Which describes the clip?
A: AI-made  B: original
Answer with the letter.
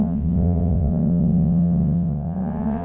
A